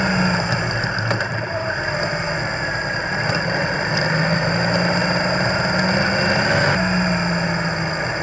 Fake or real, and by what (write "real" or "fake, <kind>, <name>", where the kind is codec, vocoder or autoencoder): real